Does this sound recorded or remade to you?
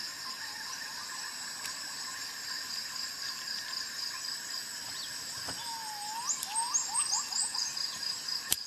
recorded